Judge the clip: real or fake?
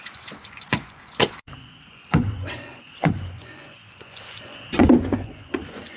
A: fake